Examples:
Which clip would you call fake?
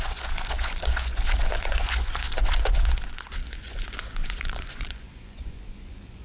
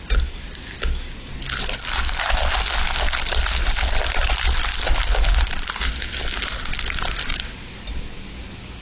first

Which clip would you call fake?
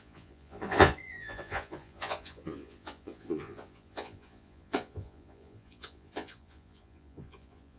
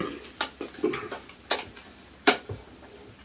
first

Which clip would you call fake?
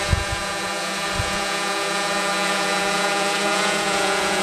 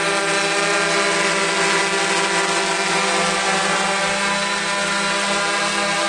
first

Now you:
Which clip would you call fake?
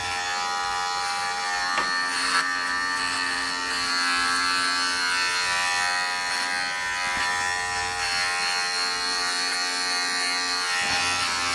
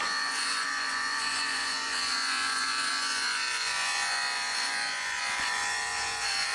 second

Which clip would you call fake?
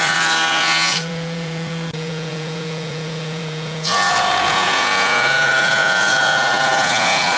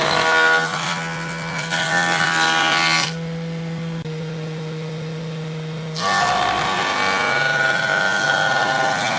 first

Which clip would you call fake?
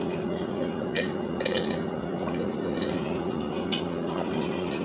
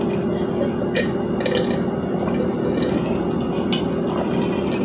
first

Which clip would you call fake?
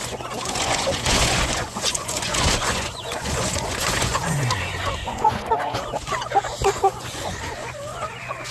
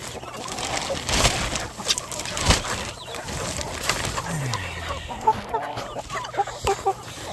first